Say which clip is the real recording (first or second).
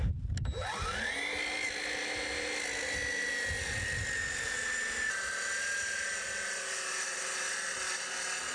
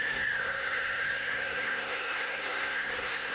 first